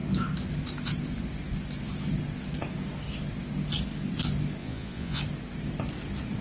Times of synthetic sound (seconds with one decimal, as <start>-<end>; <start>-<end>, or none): 4.6-5.2

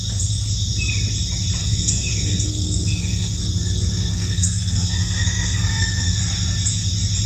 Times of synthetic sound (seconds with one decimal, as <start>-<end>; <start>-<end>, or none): 1.6-3.4; 4.1-6.2

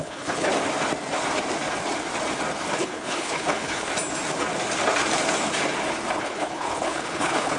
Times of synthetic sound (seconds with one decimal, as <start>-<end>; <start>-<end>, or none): 0.0-0.5; 2.7-3.9; 6.2-7.6

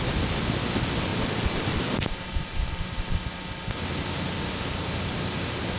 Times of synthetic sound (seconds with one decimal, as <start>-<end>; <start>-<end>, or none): 1.1-3.2

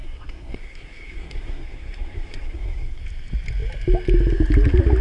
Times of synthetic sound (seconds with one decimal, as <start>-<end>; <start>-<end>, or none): 0.0-3.0

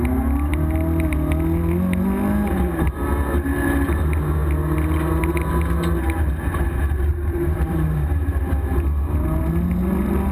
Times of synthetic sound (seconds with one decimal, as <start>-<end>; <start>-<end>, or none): 7.1-8.3